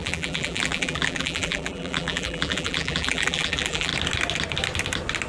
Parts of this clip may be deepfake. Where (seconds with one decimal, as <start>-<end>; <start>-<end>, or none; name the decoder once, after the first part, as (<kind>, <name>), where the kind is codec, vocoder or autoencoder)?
0.0-3.9 (vocoder, BigVGAN v2)